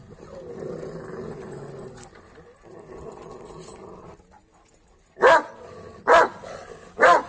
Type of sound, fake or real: real